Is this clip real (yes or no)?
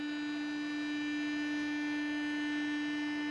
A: yes